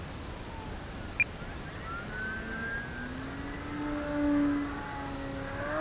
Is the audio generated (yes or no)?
no